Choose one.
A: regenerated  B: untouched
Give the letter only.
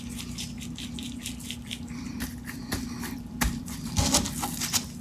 B